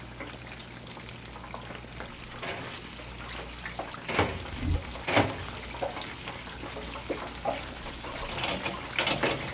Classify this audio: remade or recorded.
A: recorded